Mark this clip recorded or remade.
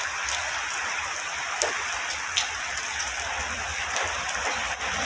recorded